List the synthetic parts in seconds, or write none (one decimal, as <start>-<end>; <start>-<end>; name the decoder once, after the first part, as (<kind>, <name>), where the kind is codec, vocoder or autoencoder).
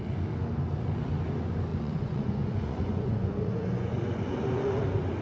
1.7-4.8 (vocoder, Vocos)